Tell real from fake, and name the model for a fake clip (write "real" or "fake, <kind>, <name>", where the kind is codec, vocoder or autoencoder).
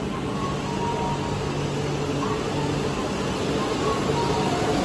real